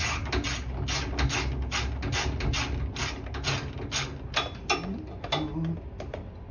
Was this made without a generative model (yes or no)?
yes